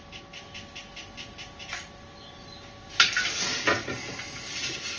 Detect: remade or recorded recorded